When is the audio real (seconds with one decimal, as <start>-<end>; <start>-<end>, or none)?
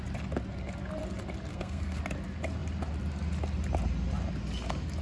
0.0-1.5; 2.0-5.0